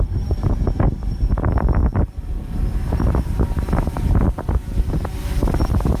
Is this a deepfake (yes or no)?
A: no